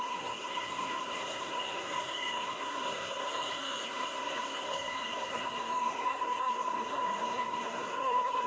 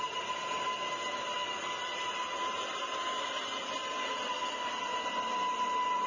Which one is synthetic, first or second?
first